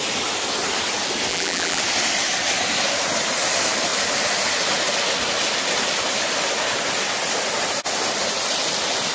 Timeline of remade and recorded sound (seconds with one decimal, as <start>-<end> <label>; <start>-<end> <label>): 0.0-1.3 recorded; 1.3-1.8 remade; 1.8-9.1 recorded